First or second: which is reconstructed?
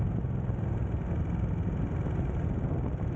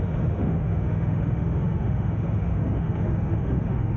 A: second